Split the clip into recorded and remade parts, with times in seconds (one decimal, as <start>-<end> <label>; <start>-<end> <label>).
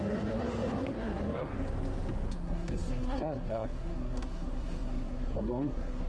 0.0-1.5 remade; 1.5-2.3 recorded; 2.3-6.1 remade